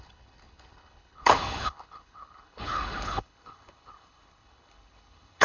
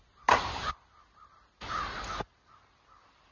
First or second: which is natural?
second